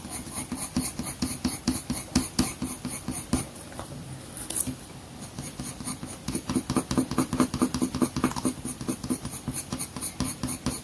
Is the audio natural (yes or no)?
yes